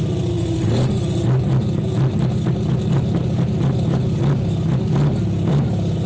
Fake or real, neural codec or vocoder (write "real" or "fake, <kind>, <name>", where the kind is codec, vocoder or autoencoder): real